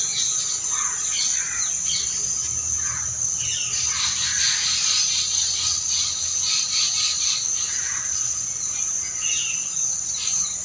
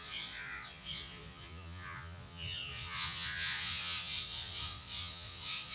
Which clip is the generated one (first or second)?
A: second